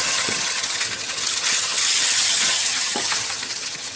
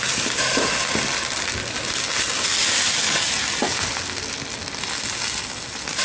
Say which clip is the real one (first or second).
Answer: second